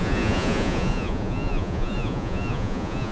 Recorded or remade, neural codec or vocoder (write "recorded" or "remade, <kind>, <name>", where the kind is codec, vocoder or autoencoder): remade, vocoder, Vocos